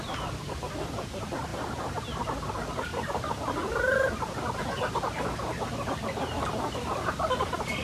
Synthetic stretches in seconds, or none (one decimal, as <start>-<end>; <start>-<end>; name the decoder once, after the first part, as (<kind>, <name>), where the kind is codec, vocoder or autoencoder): 2.9-4.1 (vocoder, BigVGAN v2)